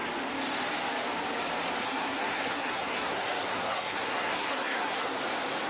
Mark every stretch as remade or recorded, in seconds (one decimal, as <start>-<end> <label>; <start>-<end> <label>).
0.0-1.8 recorded; 1.8-5.2 remade; 5.2-5.7 recorded